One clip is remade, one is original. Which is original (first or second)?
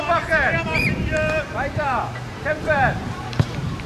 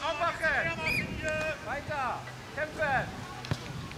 second